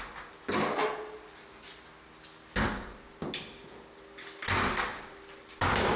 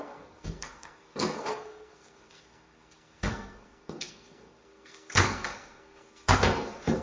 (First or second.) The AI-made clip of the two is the second